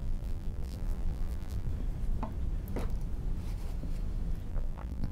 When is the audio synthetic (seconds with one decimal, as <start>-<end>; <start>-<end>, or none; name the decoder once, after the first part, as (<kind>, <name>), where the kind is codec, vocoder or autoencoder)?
0.0-1.7 (vocoder, BigVGAN v2); 4.5-5.1